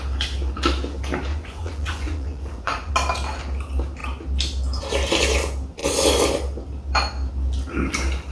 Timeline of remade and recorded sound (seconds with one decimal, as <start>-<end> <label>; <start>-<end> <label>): 0.0-1.3 recorded; 1.3-2.9 remade; 2.9-8.3 recorded